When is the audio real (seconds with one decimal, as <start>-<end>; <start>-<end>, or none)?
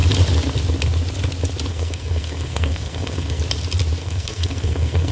0.0-1.7; 3.4-4.0